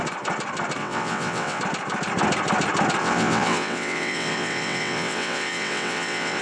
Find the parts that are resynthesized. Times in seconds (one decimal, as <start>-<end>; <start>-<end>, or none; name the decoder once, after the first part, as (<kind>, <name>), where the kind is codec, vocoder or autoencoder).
0.8-1.6 (vocoder, WaveNeXt); 3.0-6.4

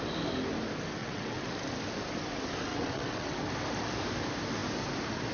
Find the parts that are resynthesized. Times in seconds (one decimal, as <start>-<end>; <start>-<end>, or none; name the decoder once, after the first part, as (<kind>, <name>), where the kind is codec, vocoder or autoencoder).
1.0-1.5 (vocoder, WaveNeXt); 2.7-3.4

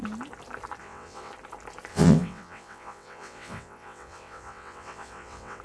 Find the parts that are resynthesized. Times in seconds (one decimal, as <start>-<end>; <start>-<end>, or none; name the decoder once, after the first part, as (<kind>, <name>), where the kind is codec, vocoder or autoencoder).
0.8-1.3 (vocoder, WaveNeXt); 1.9-5.6

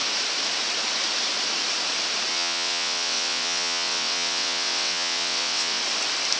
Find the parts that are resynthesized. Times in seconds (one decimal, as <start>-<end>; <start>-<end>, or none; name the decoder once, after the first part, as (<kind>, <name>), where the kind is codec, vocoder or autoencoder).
2.3-5.8 (vocoder, WaveNeXt)

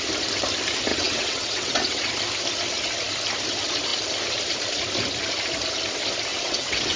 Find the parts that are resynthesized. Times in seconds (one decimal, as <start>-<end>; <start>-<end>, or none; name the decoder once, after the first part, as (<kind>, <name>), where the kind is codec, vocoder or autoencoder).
0.9-2.1 (vocoder, WaveNeXt); 6.3-7.0

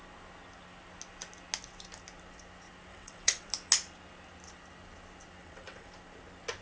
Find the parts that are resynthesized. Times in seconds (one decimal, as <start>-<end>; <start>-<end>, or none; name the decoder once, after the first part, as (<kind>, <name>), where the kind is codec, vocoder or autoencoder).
2.9-3.5 (vocoder, WaveNeXt); 5.4-5.9

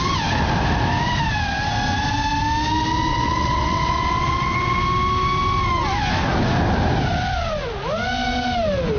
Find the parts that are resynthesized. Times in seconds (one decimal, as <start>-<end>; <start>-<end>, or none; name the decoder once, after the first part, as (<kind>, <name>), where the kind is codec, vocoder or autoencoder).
3.1-4.8 (vocoder, WaveNeXt)